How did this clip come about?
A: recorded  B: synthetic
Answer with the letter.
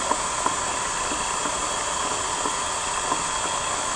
A